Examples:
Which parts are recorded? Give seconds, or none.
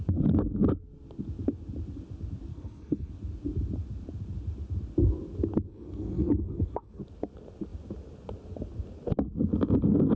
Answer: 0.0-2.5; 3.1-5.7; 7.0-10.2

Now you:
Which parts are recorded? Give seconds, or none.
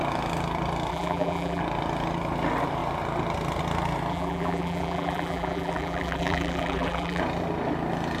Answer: 0.0-0.9; 1.6-4.1; 7.2-8.2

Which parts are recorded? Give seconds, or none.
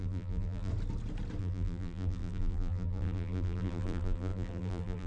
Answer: 0.7-1.4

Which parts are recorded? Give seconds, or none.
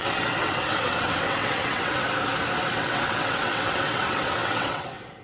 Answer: 2.0-2.7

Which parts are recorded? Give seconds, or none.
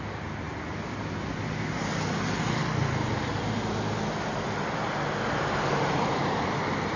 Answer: 0.0-7.0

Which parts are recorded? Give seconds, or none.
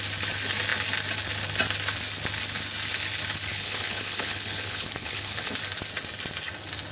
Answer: 0.0-3.5; 5.5-6.9